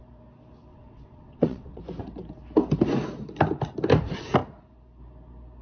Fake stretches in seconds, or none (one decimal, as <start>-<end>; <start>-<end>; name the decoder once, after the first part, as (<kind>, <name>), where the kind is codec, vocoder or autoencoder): 0.7-1.8 (vocoder, WaveNeXt)